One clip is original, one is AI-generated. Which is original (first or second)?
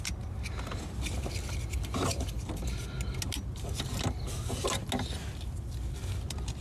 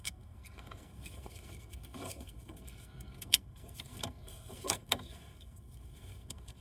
first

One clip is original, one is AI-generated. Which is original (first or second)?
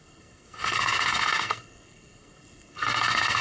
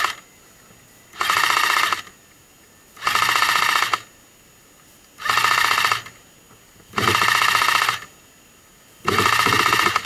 second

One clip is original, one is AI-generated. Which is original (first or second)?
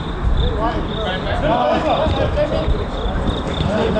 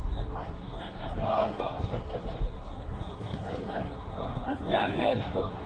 first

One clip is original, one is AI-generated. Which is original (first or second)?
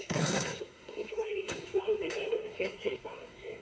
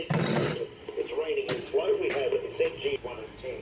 second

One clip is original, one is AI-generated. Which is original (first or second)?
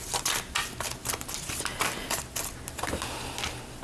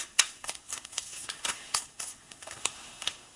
first